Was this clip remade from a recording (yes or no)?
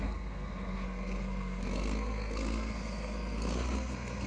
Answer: yes